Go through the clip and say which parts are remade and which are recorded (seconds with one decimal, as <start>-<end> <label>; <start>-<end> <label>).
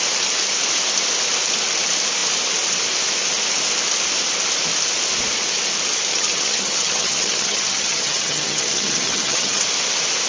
0.0-6.1 recorded; 6.1-9.6 remade; 9.6-10.3 recorded